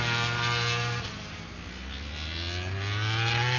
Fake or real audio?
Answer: real